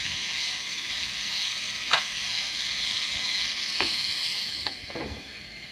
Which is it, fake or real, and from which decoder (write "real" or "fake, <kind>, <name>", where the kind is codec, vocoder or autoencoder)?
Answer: fake, codec, SNAC